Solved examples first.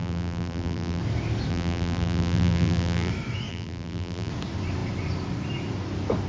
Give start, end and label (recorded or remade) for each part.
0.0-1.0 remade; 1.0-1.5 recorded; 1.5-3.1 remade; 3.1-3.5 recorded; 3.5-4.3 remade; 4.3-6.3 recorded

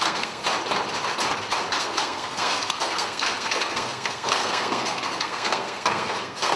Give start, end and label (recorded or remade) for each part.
0.0-0.4 remade; 0.4-1.8 recorded; 1.8-6.6 remade

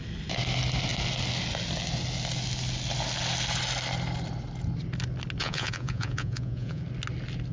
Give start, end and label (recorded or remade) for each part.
0.0-5.4 recorded; 5.4-6.8 remade; 6.8-7.5 recorded

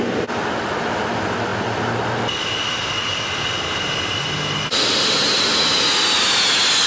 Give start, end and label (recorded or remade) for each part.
0.0-6.9 recorded